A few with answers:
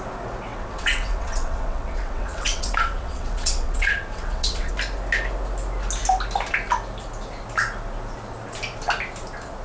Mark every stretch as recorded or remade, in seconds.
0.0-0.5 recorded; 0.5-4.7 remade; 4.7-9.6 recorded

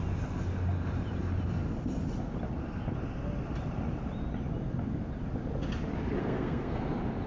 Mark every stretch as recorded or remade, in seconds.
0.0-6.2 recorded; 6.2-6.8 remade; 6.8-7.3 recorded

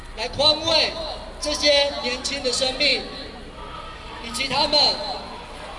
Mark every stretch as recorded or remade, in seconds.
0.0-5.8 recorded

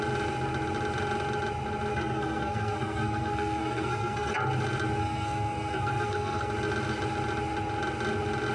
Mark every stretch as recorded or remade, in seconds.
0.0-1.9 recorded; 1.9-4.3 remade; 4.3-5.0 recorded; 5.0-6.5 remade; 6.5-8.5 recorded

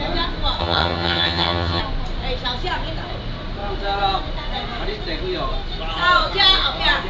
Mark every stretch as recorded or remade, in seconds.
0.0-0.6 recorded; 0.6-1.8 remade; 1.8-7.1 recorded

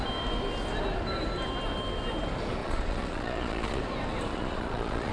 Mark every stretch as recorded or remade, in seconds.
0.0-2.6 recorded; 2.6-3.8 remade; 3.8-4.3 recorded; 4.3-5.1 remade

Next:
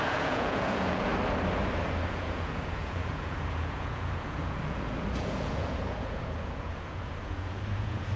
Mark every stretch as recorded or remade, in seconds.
0.0-1.1 remade; 1.1-2.1 recorded; 2.1-8.2 remade